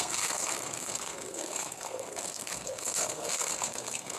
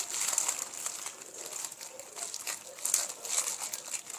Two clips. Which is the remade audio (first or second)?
first